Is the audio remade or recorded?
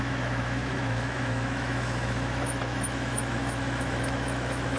remade